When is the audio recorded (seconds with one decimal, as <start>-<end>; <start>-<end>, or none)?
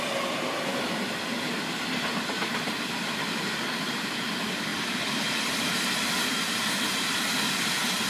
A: 0.0-8.1